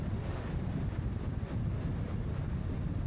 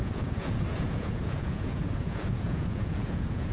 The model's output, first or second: second